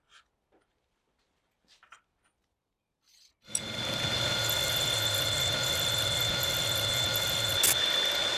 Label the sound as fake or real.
real